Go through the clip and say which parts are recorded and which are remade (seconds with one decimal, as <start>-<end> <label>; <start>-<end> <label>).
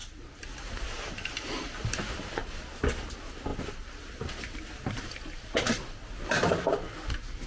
0.0-7.5 recorded